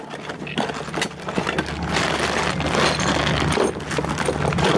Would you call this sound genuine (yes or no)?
yes